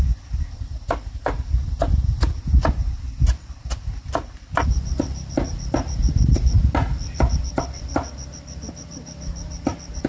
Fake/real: real